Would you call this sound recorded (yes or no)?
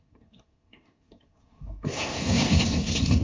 no